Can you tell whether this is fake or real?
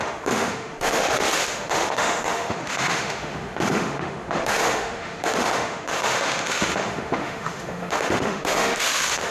fake